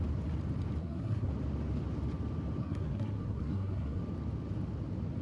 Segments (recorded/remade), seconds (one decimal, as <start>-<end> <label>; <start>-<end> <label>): 0.0-0.8 recorded; 0.8-1.3 remade; 1.3-2.6 recorded; 2.6-4.0 remade; 4.0-5.2 recorded